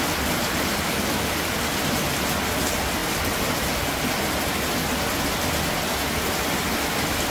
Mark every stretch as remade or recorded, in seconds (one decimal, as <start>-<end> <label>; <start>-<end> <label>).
0.0-7.3 recorded